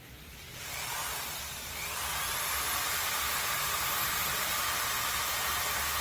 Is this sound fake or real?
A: real